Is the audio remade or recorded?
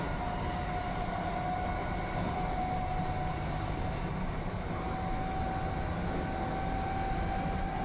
recorded